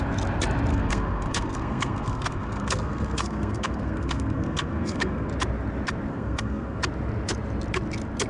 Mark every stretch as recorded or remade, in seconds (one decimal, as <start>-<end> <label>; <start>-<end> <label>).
0.0-0.7 recorded; 0.7-5.3 remade; 5.3-6.1 recorded; 6.1-6.8 remade; 6.8-8.3 recorded